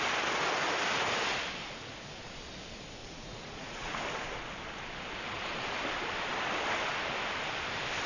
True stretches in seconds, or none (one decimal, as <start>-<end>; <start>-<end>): 0.0-1.6; 2.2-3.0; 4.0-8.1